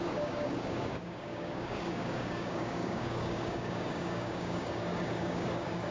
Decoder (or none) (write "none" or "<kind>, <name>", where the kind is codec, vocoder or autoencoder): codec, DAC